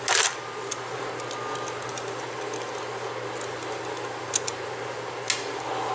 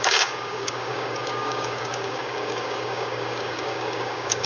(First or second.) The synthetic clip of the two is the second